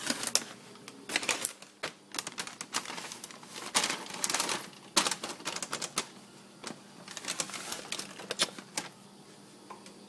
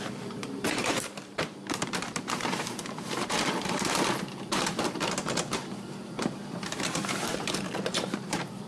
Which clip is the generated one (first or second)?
second